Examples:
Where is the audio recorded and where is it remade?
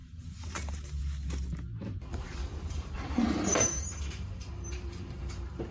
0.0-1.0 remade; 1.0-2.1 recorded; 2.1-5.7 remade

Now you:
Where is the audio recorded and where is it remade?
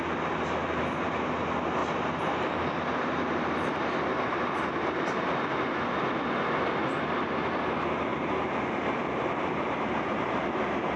0.0-0.6 recorded; 0.6-1.4 remade; 1.4-1.8 recorded; 1.8-4.4 remade; 4.4-8.1 recorded; 8.1-10.4 remade; 10.4-11.0 recorded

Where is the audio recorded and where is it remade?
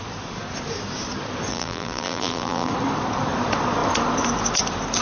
0.0-1.5 recorded; 1.5-2.7 remade; 2.7-5.0 recorded